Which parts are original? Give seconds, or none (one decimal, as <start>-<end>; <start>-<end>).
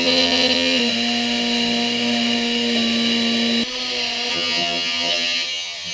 0.8-4.3